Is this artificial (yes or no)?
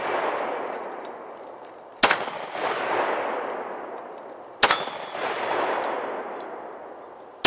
no